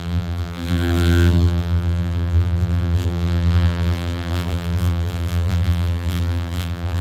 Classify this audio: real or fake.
fake